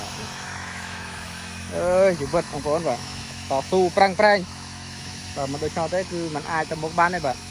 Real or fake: fake